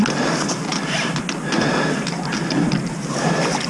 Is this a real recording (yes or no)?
yes